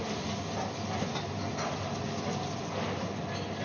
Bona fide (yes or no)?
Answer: yes